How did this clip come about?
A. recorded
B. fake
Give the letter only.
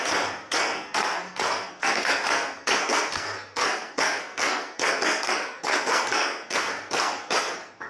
B